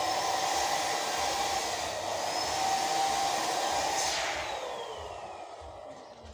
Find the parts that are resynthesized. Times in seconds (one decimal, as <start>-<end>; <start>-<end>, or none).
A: none